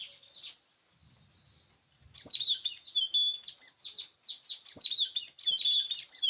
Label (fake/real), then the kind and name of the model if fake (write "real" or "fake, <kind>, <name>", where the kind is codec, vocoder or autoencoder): real